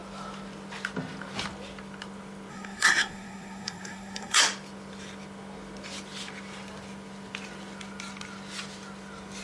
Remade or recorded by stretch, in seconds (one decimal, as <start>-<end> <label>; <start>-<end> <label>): 0.0-2.5 recorded; 2.5-4.4 remade; 4.4-9.4 recorded